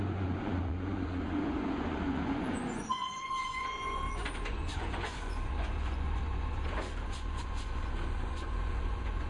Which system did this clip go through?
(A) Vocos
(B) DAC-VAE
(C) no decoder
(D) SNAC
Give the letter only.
A